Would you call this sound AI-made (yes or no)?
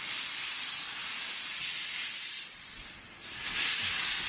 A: no